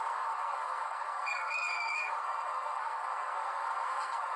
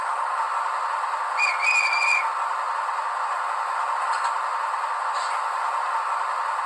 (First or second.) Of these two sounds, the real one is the second